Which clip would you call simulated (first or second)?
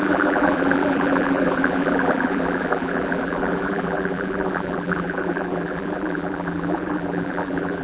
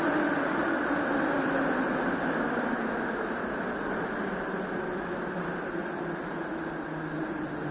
first